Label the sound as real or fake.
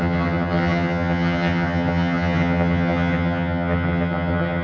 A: fake